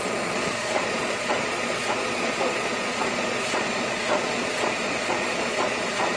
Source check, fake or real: fake